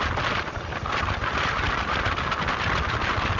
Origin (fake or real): real